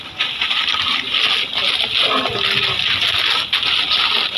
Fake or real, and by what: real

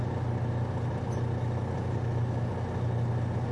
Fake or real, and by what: real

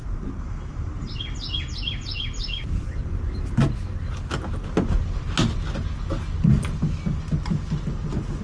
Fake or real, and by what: real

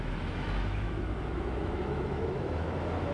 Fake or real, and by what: fake, autoencoder, DAC-VAE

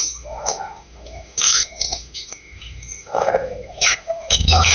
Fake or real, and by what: fake, autoencoder, DAC-VAE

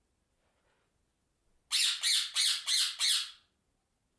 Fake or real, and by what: real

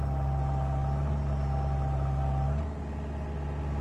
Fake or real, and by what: real